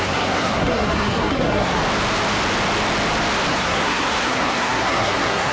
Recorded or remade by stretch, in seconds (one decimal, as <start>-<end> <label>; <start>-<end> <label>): 0.0-1.8 remade; 1.8-3.5 recorded; 3.5-5.5 remade